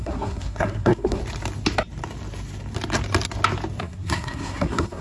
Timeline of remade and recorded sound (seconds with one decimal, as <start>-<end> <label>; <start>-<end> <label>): 0.0-1.2 remade; 1.2-3.8 recorded; 3.8-5.0 remade